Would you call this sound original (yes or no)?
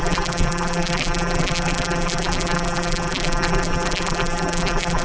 no